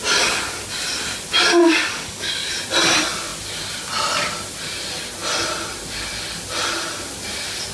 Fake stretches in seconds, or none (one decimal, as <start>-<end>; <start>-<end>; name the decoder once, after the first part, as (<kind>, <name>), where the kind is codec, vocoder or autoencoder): 1.6-2.5 (codec, DAC)